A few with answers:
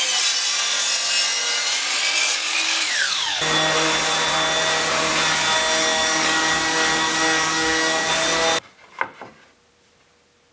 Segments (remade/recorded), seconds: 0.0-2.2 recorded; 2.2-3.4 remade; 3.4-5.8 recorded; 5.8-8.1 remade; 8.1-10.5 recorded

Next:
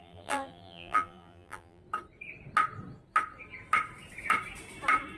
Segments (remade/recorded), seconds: 0.0-1.8 remade; 1.8-5.2 recorded

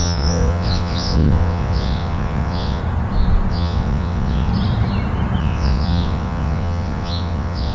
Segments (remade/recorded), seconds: 0.0-2.8 remade; 2.8-3.5 recorded; 3.5-4.5 remade; 4.5-5.4 recorded; 5.4-7.7 remade